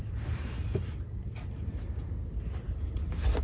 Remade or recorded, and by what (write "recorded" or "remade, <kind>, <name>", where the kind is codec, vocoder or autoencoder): remade, vocoder, BigVGAN v2